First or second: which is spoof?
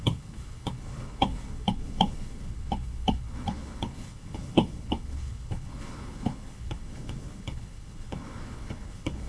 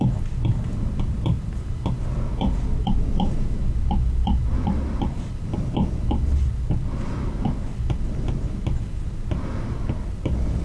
first